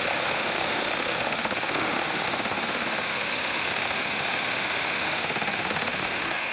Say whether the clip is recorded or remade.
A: remade